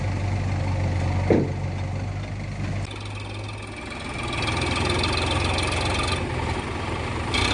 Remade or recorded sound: recorded